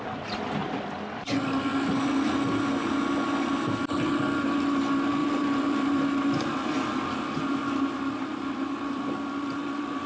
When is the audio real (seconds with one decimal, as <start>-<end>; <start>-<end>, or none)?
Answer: 0.0-5.2